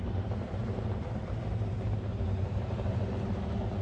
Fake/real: fake